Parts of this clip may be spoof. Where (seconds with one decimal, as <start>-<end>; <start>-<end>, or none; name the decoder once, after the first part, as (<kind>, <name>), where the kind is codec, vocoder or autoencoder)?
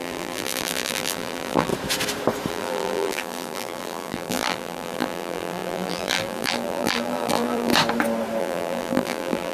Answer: 0.0-1.7 (vocoder, BigVGAN v2); 2.5-7.7; 8.4-9.5